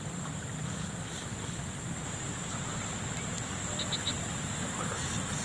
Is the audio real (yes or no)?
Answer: yes